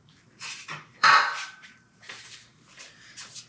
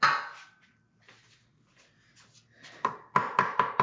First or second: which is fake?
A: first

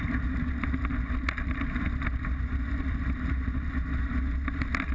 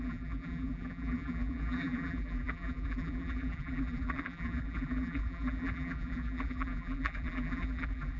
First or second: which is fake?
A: second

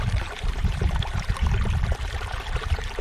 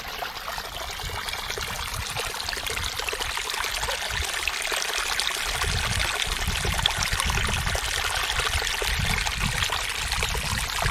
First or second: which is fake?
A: first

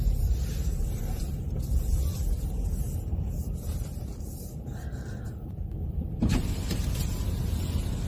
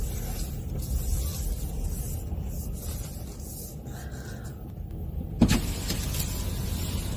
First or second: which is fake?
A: first